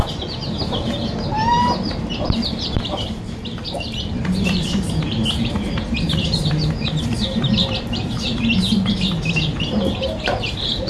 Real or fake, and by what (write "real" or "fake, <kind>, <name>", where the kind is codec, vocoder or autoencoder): fake, vocoder, BigVGAN v2